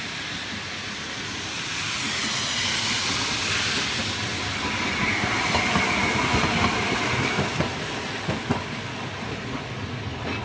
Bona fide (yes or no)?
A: yes